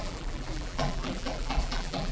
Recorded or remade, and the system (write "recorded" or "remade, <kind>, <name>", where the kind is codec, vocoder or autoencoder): remade, vocoder, BigVGAN v2